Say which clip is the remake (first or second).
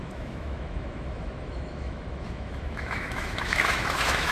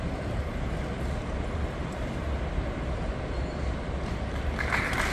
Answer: first